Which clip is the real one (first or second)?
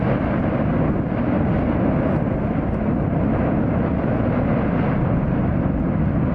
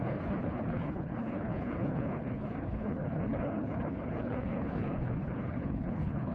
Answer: first